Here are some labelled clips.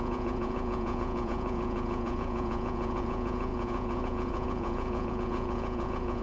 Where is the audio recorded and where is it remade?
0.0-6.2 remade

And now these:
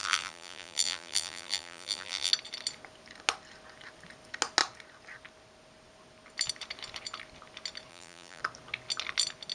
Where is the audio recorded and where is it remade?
0.0-2.3 remade; 2.3-7.9 recorded; 7.9-8.4 remade; 8.4-9.5 recorded

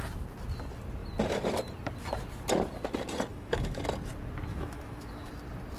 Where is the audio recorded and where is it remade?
0.0-3.3 recorded; 3.3-3.8 remade; 3.8-4.5 recorded; 4.5-5.3 remade; 5.3-5.8 recorded

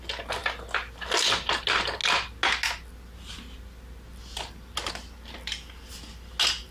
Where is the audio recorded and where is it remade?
0.0-6.7 recorded

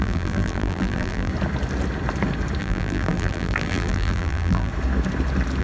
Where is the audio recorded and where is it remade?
0.0-1.3 remade; 1.3-2.6 recorded; 2.6-4.7 remade; 4.7-5.6 recorded